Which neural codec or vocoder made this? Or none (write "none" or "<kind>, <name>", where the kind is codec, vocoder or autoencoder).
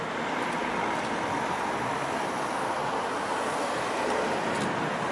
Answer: none